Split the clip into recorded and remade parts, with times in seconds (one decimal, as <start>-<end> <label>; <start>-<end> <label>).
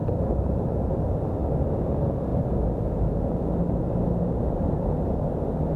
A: 0.0-5.8 recorded